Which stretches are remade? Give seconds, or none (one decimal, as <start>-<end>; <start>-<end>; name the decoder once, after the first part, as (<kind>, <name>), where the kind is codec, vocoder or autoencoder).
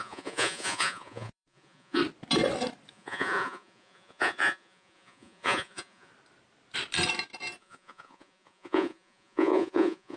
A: 0.0-2.0 (vocoder, Vocos); 2.9-6.1; 7.6-10.2